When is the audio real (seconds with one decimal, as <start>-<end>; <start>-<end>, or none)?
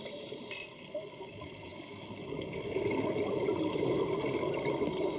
0.0-5.2